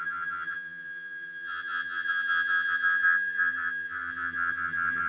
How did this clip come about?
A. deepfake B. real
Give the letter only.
A